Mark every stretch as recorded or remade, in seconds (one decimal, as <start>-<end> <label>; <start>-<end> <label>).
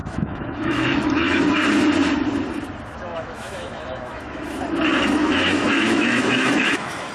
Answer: 0.0-1.4 remade; 1.4-3.1 recorded; 3.1-4.6 remade; 4.6-5.2 recorded; 5.2-7.1 remade